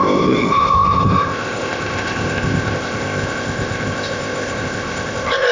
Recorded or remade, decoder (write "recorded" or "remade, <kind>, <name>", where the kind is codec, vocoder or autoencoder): remade, codec, ZipCodec